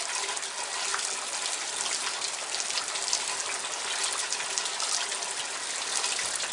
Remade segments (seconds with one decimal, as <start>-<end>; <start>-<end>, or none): none